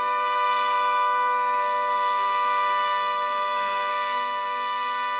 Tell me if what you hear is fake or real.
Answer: fake